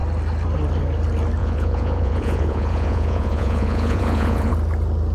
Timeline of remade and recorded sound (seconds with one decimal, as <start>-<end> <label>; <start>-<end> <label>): 0.0-1.4 recorded; 1.4-4.5 remade; 4.5-5.1 recorded